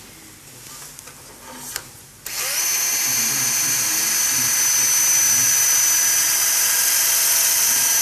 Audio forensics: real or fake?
real